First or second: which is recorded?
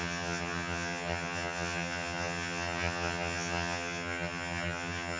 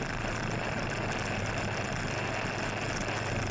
second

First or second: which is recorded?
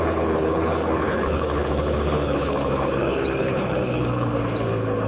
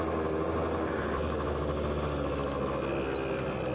second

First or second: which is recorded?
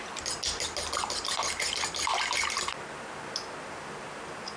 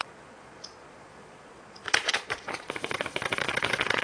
first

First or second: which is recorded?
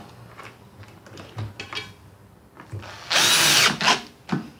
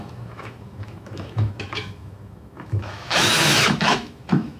first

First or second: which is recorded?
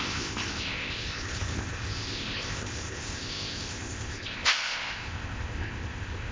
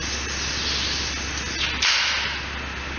second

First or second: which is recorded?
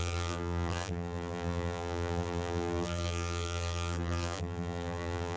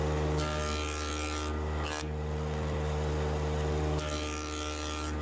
second